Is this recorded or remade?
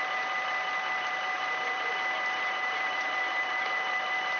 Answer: remade